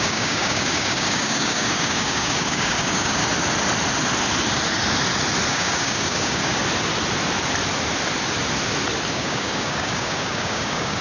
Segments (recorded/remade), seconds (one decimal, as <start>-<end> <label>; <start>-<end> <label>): 0.0-3.2 remade; 3.2-5.5 recorded; 5.5-6.6 remade; 6.6-9.1 recorded; 9.1-11.0 remade